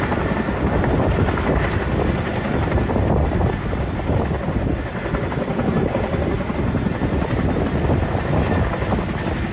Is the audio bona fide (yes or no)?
yes